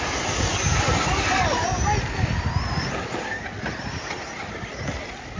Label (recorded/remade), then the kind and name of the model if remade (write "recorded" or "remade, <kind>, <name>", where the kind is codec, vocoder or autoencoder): recorded